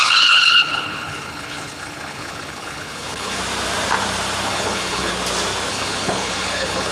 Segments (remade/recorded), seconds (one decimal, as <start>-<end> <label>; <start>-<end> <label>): 0.0-3.4 remade; 3.4-4.5 recorded; 4.5-5.1 remade; 5.1-5.7 recorded; 5.7-6.9 remade